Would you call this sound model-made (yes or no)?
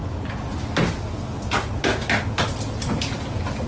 no